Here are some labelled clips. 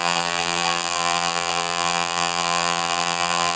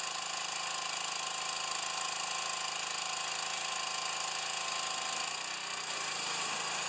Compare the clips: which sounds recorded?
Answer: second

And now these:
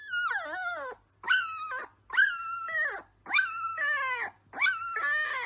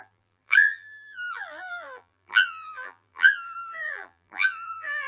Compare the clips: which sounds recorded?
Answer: first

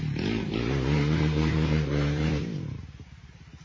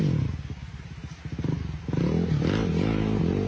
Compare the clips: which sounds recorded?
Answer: second